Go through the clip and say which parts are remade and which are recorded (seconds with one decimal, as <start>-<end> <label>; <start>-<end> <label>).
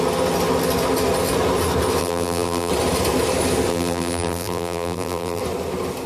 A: 0.0-2.0 recorded; 2.0-2.7 remade; 2.7-3.7 recorded; 3.7-5.4 remade; 5.4-6.1 recorded